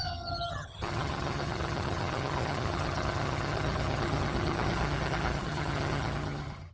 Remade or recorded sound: remade